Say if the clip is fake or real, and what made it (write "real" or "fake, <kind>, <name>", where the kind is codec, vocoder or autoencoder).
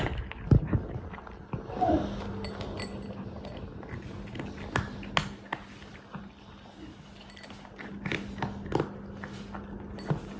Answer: real